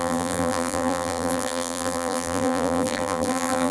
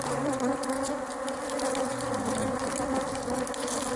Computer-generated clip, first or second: first